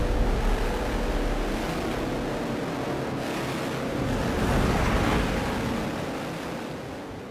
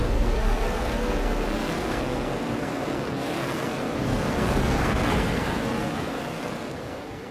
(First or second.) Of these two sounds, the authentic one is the first